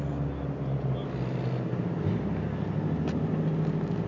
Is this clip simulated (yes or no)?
no